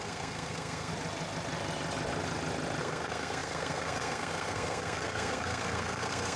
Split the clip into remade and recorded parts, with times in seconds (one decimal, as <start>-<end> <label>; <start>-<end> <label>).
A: 0.0-0.9 remade; 0.9-2.8 recorded; 2.8-6.4 remade